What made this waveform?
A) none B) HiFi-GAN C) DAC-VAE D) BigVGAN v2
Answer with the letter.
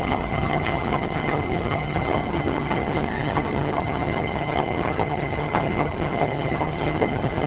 B